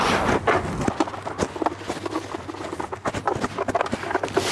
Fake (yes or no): no